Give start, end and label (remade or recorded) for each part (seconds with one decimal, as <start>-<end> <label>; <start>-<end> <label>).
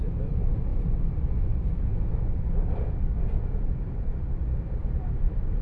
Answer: 0.0-4.8 recorded; 4.8-5.6 remade